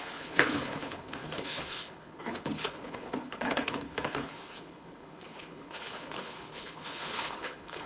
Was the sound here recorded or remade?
remade